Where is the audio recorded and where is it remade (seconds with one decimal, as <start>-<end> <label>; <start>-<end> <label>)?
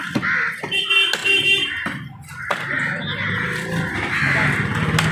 0.0-5.1 recorded